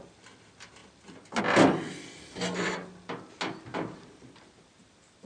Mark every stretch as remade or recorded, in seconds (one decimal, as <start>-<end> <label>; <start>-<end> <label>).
0.0-3.7 recorded; 3.7-5.3 remade